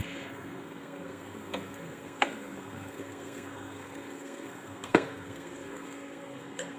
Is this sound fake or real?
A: fake